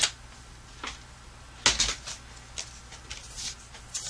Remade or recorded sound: recorded